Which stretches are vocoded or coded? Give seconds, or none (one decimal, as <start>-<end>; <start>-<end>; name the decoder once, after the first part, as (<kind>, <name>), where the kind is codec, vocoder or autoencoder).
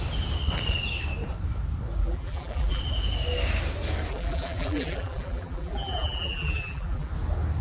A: 2.0-2.8 (vocoder, BigVGAN v2); 4.1-7.1